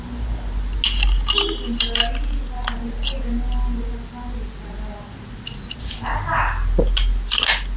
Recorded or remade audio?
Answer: recorded